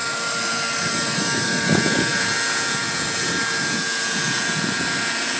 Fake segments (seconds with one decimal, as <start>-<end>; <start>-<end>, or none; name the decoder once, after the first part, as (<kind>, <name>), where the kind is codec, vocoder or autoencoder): 2.1-5.4 (vocoder, Vocos)